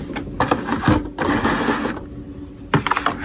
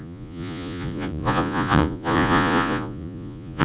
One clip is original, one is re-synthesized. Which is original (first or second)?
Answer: first